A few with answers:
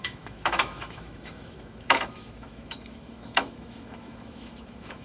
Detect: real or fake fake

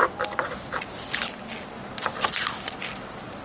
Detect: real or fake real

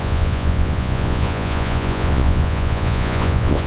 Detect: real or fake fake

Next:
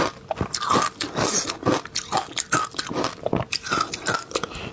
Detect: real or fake real